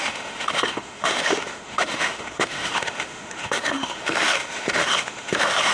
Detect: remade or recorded remade